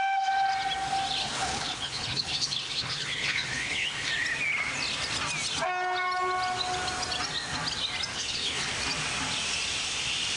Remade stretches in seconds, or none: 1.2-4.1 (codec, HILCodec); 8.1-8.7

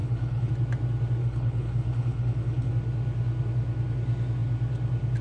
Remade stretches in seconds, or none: 0.0-0.5 (codec, HILCodec); 1.2-2.7